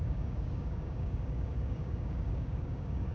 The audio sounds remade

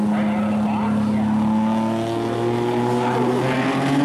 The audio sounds recorded